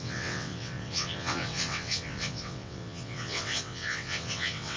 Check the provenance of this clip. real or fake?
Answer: fake